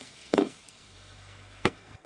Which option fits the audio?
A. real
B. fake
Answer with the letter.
B